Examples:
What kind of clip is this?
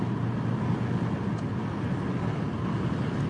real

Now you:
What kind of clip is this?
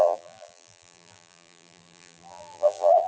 fake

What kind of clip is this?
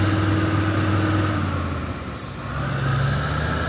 real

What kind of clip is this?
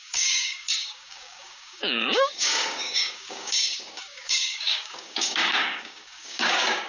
fake